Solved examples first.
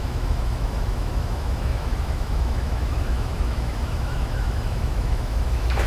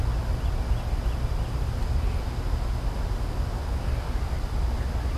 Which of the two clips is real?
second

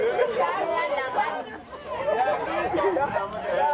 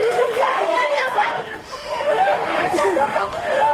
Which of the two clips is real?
first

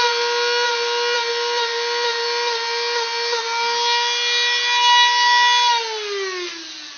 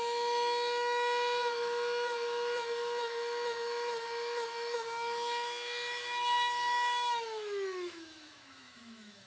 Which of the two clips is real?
first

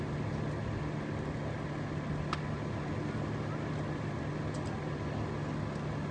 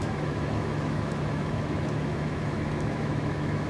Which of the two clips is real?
first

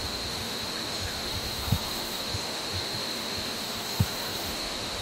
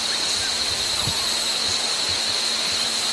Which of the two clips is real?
second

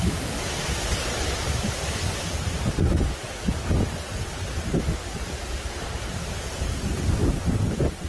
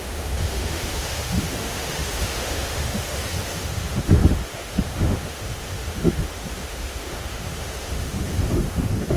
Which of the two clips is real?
first